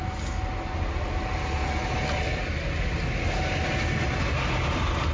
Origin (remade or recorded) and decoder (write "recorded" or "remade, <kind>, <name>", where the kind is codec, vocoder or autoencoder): recorded